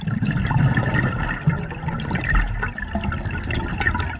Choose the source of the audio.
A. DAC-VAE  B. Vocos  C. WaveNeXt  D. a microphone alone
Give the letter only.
D